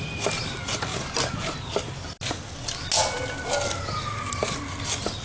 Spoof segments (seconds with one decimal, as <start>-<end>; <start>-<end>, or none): none